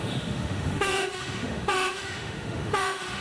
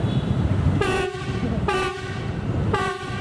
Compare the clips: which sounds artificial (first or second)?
first